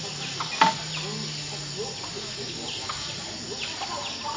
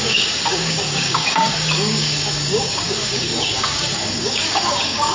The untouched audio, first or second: first